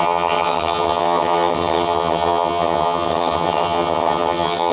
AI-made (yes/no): yes